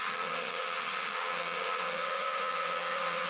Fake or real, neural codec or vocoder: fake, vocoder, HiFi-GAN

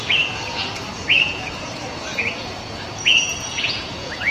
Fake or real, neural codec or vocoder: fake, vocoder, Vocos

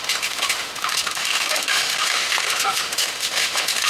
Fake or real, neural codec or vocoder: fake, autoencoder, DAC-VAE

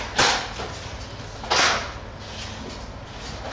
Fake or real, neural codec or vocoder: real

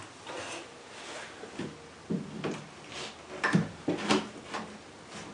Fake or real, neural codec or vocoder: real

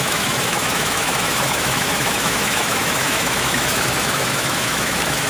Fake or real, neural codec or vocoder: fake, autoencoder, DAC-VAE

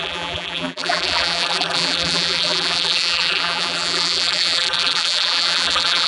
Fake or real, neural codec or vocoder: fake, vocoder, BigVGAN v2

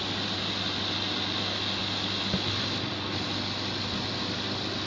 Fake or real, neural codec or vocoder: real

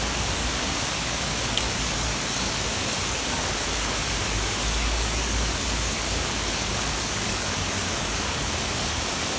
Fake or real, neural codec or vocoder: fake, codec, DAC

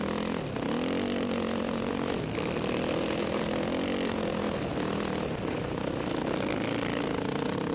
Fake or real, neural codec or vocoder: real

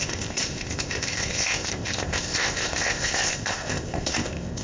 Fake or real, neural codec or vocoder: fake, codec, ZipCodec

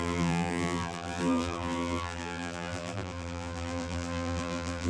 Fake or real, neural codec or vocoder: fake, vocoder, BigVGAN v2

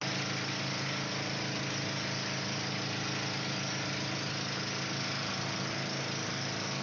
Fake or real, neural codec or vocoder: real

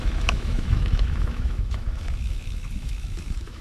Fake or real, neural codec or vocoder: fake, autoencoder, DAC-VAE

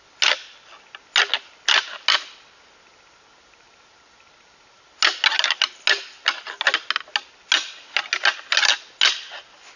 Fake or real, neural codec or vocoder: real